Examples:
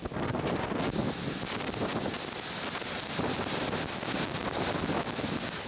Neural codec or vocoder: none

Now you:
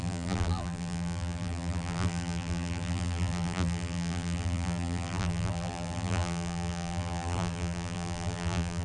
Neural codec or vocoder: vocoder, BigVGAN v2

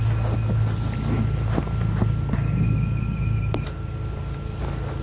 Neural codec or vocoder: none